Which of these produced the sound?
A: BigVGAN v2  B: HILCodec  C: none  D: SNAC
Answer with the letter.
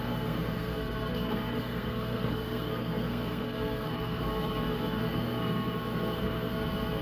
D